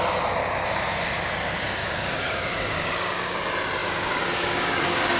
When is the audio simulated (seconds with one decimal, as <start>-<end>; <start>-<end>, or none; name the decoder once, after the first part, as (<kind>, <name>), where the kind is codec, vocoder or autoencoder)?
1.8-3.4 (codec, DAC); 3.8-5.2